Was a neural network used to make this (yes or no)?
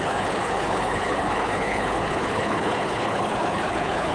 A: yes